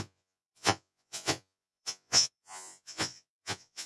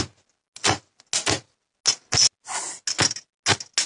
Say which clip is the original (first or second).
second